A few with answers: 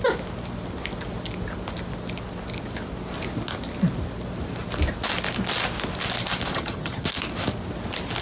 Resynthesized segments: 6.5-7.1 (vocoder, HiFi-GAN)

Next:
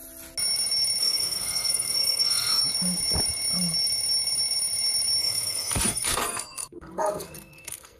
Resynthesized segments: 1.0-2.6 (codec, SNAC); 5.2-8.0

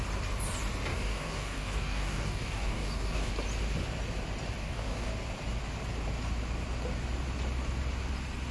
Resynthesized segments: 0.9-3.3 (codec, DAC); 4.6-5.1

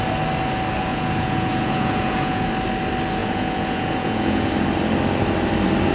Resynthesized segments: 0.9-2.5 (vocoder, Vocos); 3.2-4.5

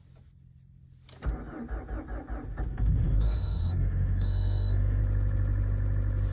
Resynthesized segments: 2.7-5.0 (autoencoder, DAC-VAE)

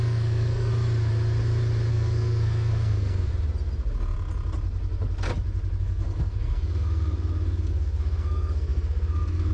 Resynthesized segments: 0.0-0.7 (codec, SNAC); 1.9-3.3; 5.8-9.5